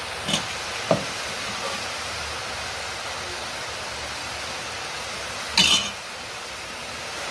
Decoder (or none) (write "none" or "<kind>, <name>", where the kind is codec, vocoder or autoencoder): none